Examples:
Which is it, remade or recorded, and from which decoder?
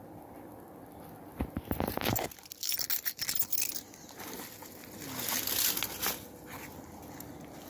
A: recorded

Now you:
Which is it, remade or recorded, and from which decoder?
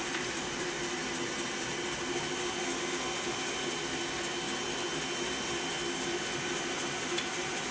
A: recorded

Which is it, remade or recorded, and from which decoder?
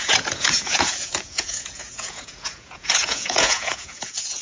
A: remade, vocoder, Vocos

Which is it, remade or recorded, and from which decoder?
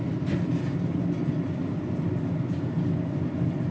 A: recorded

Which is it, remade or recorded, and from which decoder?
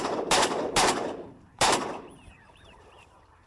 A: remade, vocoder, BigVGAN v2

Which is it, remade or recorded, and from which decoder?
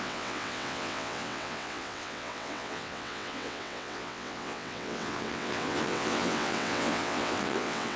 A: remade, vocoder, WaveNeXt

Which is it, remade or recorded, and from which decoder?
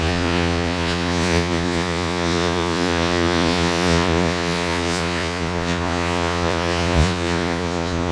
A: remade, vocoder, Vocos